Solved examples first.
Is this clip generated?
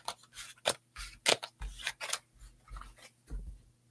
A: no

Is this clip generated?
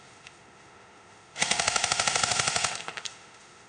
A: yes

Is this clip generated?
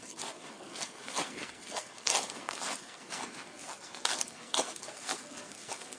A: yes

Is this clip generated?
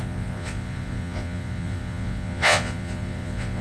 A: yes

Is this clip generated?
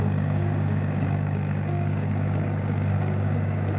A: yes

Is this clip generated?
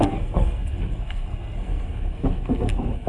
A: yes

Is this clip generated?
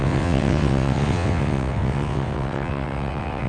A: yes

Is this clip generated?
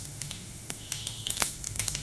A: yes